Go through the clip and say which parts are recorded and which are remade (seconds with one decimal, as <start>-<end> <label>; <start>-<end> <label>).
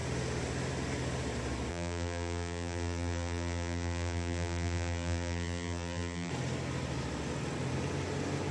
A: 0.0-1.7 recorded; 1.7-6.3 remade; 6.3-8.5 recorded